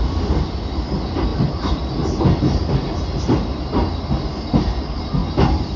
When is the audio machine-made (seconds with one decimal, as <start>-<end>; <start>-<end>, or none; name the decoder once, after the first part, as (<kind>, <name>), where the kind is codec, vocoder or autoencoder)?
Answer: none